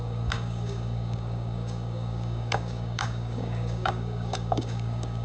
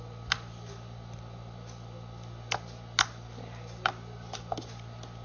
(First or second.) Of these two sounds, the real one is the second